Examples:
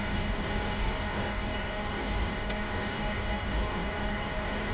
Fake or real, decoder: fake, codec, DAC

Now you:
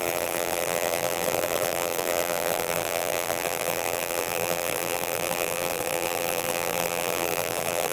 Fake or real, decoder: fake, vocoder, BigVGAN v2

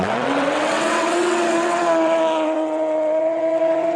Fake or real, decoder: fake, vocoder, WaveNeXt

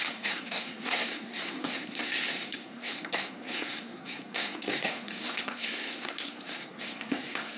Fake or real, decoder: fake, codec, SNAC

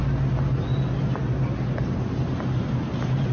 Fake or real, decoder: real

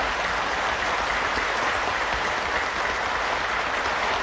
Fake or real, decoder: real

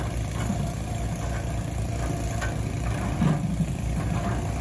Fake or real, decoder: real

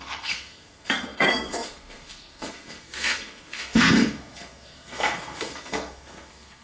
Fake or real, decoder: fake, codec, SNAC